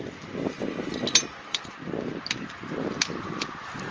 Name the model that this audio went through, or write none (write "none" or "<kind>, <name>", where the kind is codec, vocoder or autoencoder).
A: none